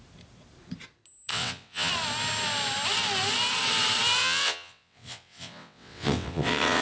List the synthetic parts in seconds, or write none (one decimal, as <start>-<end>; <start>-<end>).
1.3-1.9; 4.2-6.8